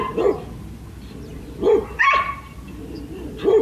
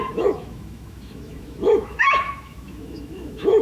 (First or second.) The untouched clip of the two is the first